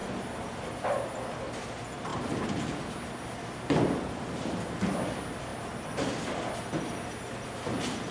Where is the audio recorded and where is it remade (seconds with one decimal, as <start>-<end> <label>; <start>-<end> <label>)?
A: 0.0-8.1 recorded